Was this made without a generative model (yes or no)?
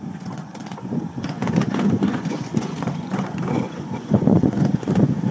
no